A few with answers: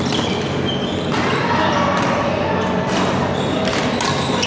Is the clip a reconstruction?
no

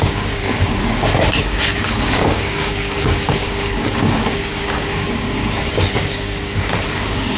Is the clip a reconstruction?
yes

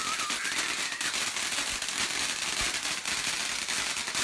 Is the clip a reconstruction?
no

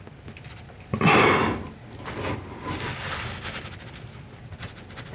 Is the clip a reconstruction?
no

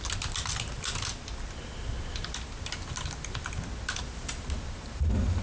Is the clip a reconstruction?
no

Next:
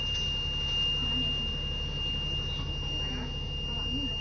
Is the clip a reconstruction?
no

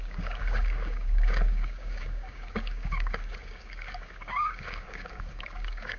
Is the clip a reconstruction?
yes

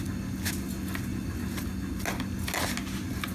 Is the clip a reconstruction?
no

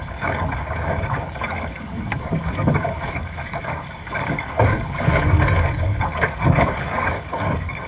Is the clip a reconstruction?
yes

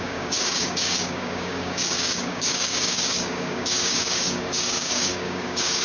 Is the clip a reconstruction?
yes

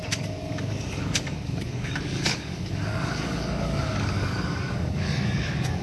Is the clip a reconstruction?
yes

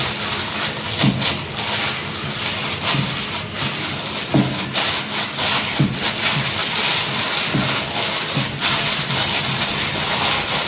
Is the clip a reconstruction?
no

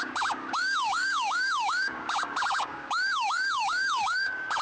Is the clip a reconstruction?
yes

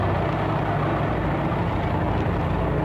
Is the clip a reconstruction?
no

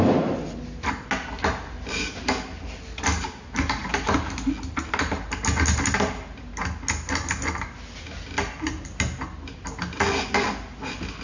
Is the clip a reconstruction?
no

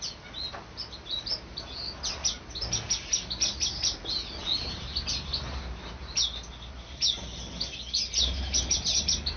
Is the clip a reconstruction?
no